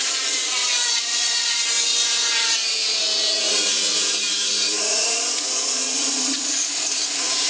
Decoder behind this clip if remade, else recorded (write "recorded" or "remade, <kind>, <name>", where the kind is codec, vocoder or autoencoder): remade, vocoder, Vocos